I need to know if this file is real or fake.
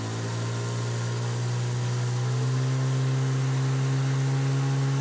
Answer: real